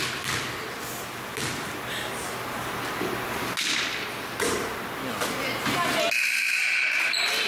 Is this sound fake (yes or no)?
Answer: no